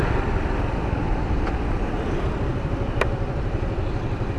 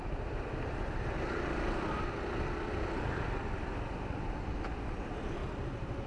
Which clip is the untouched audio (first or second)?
second